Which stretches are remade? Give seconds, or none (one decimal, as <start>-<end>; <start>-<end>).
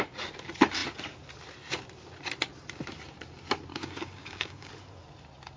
3.7-4.7